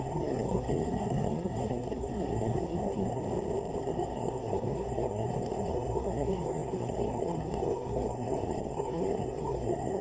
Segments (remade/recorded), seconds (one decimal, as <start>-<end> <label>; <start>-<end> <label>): 0.0-3.2 remade; 3.2-3.8 recorded; 3.8-10.0 remade